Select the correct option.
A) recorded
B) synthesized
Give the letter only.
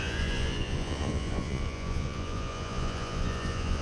B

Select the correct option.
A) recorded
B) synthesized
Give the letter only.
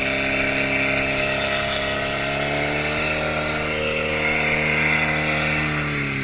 A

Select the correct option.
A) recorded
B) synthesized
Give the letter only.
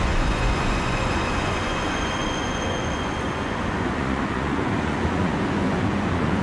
B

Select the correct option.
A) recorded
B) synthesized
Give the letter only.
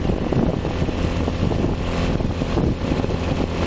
A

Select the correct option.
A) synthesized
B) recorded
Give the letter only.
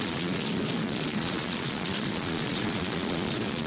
A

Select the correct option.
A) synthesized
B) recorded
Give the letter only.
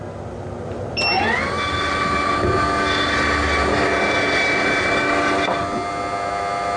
B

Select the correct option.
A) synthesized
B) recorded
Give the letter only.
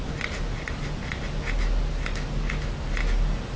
B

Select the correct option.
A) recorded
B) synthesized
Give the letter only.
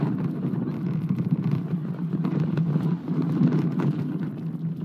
A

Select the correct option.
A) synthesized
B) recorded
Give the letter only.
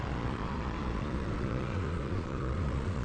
A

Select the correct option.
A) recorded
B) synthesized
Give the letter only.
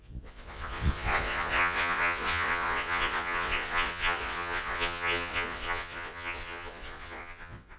B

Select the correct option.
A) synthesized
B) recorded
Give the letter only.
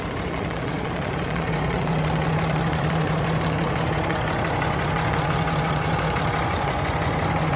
A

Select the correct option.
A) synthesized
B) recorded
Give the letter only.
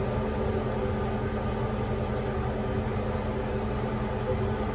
B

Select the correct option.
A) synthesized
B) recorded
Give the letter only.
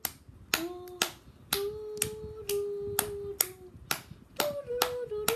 B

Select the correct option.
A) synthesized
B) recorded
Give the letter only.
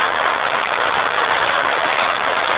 A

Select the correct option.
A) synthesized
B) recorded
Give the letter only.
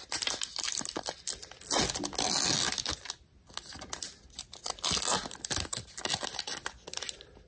B